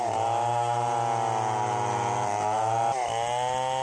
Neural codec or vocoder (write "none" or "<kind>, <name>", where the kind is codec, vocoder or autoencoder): none